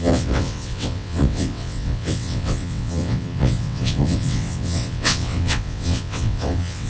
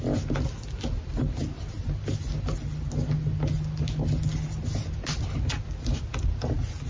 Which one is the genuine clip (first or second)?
second